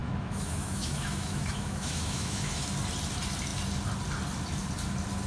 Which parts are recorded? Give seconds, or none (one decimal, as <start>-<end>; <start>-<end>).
2.7-5.3